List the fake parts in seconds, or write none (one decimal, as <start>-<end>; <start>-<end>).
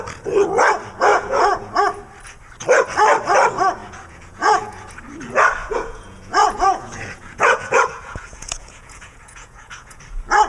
1.1-1.7; 3.8-4.9; 5.6-10.0